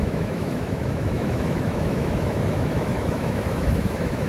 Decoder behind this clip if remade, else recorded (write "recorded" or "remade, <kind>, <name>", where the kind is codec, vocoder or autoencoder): remade, autoencoder, DAC-VAE